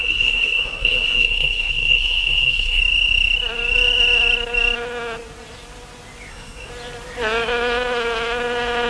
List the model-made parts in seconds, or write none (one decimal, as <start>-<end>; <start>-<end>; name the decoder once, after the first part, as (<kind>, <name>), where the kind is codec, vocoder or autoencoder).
0.0-2.8 (codec, SNAC); 6.3-6.7